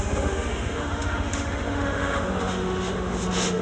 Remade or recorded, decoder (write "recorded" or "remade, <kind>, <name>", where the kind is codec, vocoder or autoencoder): remade, autoencoder, DAC-VAE